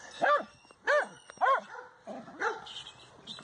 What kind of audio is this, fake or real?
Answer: real